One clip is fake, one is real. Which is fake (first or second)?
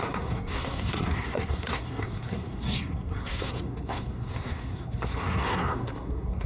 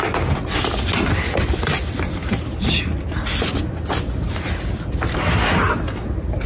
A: first